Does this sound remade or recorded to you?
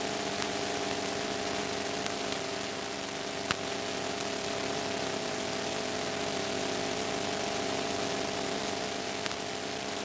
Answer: recorded